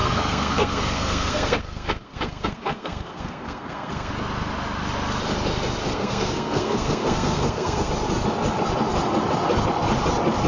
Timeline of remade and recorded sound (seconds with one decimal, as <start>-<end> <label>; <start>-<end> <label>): 0.0-4.1 remade; 4.1-5.8 recorded; 5.8-7.9 remade; 7.9-10.5 recorded

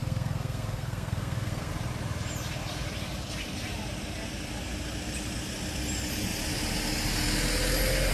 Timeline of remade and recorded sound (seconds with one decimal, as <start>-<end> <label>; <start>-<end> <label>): 0.0-1.7 remade; 1.7-8.1 recorded

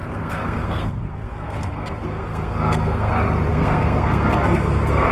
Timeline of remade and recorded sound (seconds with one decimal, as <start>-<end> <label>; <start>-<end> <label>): 0.0-3.1 remade; 3.1-3.5 recorded; 3.5-5.1 remade

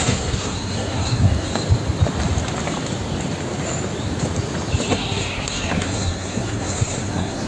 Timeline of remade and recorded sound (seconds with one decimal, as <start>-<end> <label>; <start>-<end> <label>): 0.0-1.5 remade; 1.5-4.9 recorded; 4.9-7.5 remade

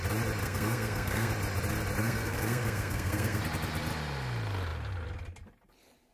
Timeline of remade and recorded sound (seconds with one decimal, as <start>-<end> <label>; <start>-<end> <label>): 0.0-0.4 recorded; 0.4-1.3 remade; 1.3-2.0 recorded; 2.0-3.4 remade; 3.4-6.1 recorded

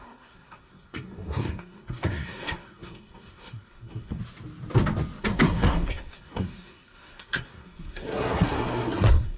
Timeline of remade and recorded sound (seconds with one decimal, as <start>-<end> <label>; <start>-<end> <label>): 0.0-4.2 remade; 4.2-5.2 recorded; 5.2-9.4 remade

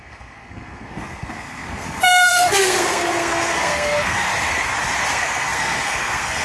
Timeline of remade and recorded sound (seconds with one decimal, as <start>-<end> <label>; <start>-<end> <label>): 0.0-4.3 remade; 4.3-5.1 recorded; 5.1-6.4 remade

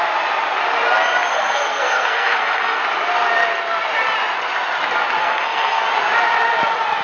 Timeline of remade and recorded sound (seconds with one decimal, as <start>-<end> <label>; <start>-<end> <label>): 0.0-1.3 recorded; 1.3-2.8 remade; 2.8-5.2 recorded; 5.2-5.8 remade; 5.8-7.0 recorded